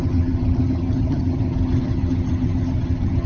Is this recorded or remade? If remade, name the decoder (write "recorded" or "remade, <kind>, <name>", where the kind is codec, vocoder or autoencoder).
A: remade, vocoder, HiFi-GAN